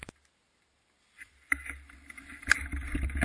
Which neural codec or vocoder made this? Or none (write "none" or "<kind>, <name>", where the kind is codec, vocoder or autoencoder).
none